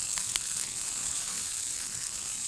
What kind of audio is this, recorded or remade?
remade